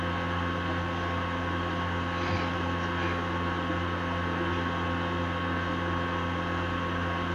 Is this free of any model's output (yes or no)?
yes